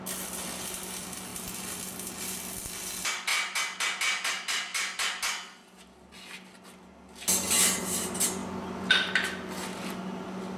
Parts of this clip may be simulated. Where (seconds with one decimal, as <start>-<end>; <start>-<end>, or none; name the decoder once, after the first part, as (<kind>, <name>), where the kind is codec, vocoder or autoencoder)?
none